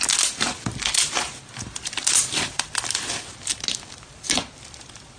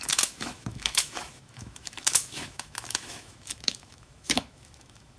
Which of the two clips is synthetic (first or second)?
second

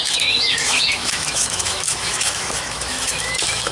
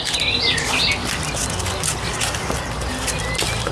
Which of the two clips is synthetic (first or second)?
first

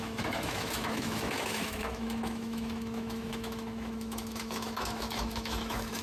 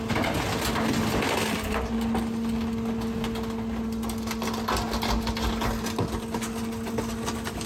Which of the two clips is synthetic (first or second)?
first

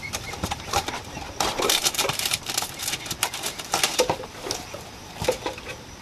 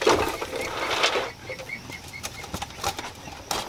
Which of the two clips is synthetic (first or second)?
first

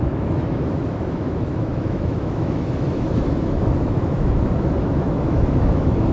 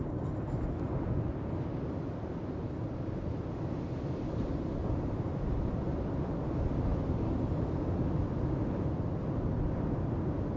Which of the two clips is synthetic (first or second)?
first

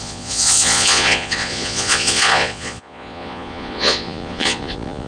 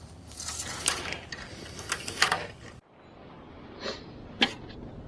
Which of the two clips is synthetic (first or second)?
first